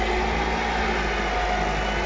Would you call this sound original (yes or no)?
yes